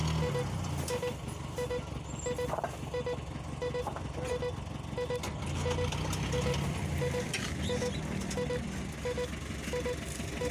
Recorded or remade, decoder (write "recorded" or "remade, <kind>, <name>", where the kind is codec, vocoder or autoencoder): recorded